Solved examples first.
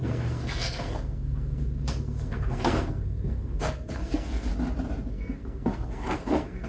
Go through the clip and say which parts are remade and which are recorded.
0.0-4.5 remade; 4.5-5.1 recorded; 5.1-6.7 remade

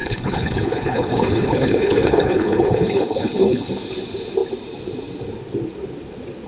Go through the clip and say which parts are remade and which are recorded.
0.0-3.7 remade; 3.7-6.5 recorded

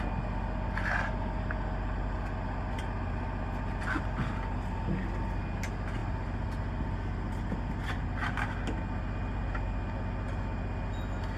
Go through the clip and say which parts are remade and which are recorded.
0.0-11.4 recorded

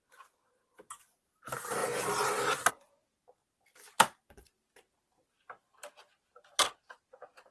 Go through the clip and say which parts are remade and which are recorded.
0.0-3.4 recorded; 3.4-6.7 remade; 6.7-7.5 recorded

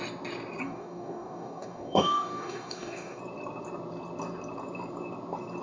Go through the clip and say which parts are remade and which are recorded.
0.0-0.6 recorded; 0.6-3.2 remade; 3.2-5.6 recorded